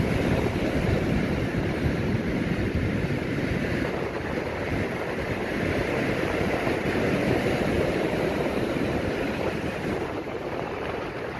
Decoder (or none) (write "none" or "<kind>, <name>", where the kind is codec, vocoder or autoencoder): vocoder, BigVGAN v2